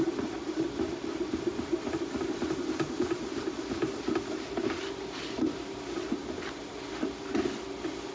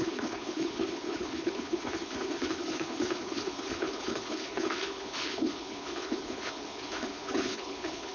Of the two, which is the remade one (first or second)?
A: second